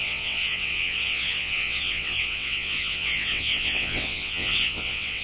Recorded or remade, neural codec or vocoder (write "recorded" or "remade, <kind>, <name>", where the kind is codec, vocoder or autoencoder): remade, vocoder, WaveNeXt